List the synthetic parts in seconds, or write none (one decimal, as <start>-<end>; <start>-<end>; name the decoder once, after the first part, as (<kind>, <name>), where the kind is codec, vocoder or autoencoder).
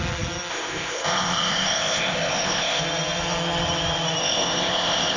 0.5-2.8 (codec, ZipCodec); 4.2-5.2